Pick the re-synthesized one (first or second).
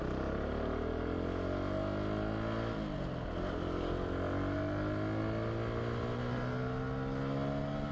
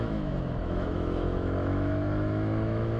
second